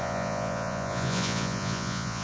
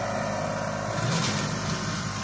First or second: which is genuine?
second